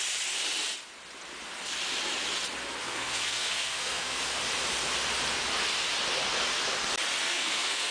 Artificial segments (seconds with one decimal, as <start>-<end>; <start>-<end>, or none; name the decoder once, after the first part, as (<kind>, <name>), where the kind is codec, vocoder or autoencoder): 2.8-4.2 (codec, SNAC); 7.2-7.9